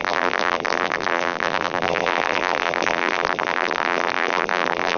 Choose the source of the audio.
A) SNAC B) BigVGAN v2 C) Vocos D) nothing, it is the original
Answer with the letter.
B